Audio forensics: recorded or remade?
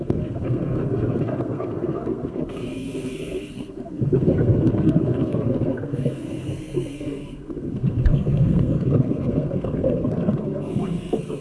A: remade